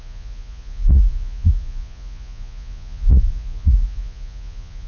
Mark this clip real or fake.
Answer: fake